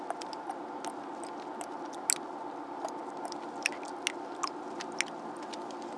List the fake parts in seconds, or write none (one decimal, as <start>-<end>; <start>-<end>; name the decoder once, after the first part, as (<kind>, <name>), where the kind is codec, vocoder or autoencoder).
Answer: none